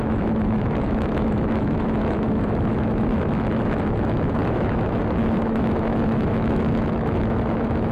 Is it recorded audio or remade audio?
remade